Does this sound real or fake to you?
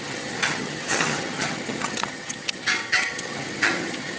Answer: fake